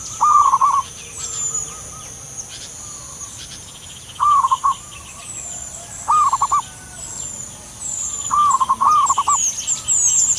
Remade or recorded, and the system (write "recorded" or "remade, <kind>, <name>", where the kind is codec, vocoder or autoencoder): recorded